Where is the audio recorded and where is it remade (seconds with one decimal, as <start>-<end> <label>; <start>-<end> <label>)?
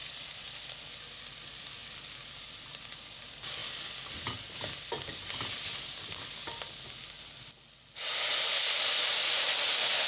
0.0-1.8 remade; 1.8-2.3 recorded; 2.3-3.6 remade; 3.6-8.4 recorded; 8.4-10.1 remade